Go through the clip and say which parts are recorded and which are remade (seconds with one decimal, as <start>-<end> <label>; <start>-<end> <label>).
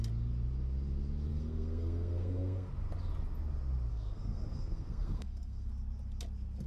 0.0-1.3 recorded; 1.3-2.7 remade; 2.7-3.9 recorded; 3.9-5.7 remade; 5.7-6.7 recorded